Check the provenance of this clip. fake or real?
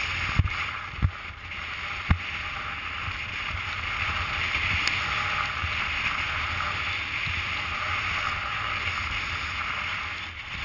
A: real